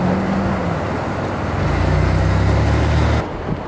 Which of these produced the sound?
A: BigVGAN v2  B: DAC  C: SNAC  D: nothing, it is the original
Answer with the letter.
D